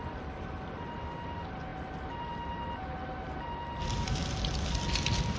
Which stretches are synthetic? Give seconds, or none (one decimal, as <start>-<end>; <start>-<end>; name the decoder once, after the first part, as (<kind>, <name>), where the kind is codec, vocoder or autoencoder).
none